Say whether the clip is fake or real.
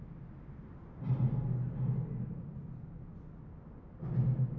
real